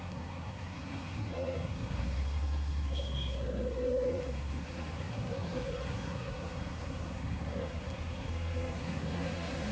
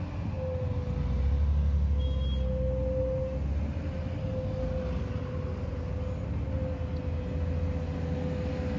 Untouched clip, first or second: second